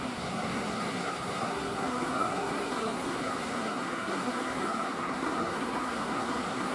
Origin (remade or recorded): remade